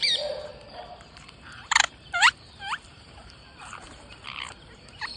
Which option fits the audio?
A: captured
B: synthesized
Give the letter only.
B